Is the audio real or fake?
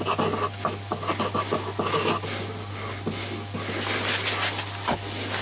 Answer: real